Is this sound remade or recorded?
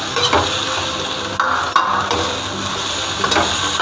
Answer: recorded